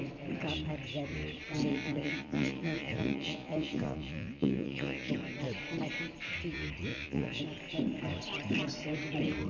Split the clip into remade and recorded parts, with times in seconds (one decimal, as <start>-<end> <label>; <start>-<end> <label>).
0.0-1.7 recorded; 1.7-5.1 remade; 5.1-6.9 recorded; 6.9-7.4 remade; 7.4-9.5 recorded